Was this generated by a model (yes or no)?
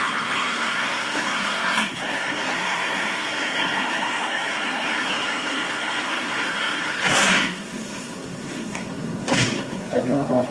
yes